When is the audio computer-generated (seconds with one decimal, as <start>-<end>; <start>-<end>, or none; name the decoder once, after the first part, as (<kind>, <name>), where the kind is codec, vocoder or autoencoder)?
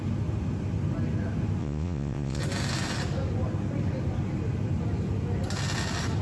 1.6-2.4 (vocoder, Vocos)